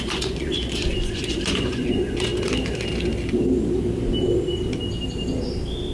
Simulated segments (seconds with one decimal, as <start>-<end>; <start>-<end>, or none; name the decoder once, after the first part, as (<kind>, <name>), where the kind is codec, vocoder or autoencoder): 0.0-2.3 (vocoder, Vocos)